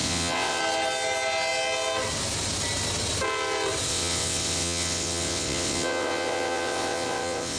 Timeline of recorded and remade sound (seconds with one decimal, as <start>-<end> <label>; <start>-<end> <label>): 0.0-0.6 remade; 0.6-3.9 recorded; 3.9-7.6 remade